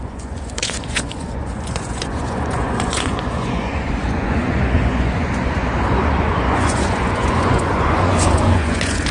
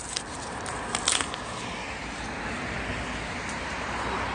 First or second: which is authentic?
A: second